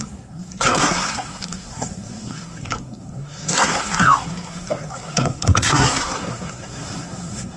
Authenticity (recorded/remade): remade